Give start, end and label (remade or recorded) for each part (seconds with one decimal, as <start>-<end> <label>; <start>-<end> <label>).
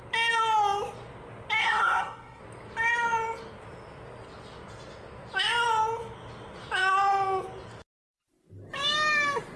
0.0-1.6 recorded; 1.6-2.4 remade; 2.4-9.6 recorded